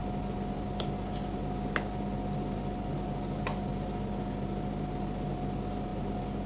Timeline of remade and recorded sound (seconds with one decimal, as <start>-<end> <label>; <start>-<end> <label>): 0.0-6.5 recorded